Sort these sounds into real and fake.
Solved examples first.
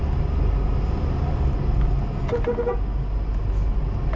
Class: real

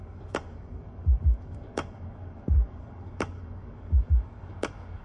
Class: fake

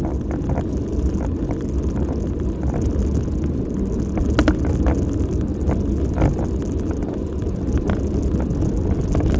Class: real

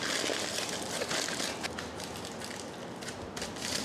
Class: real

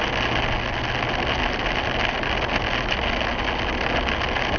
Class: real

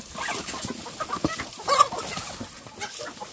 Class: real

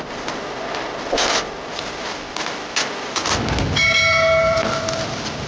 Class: real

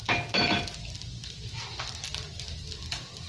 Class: real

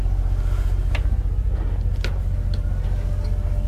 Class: real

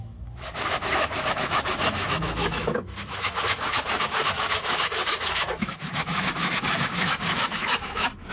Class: fake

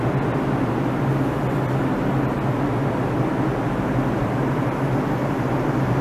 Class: real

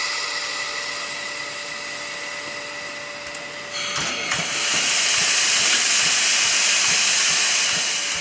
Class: real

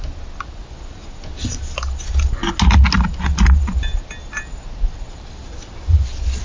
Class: real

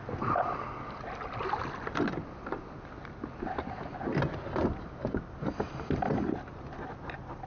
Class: real